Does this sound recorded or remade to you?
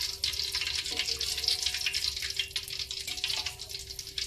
recorded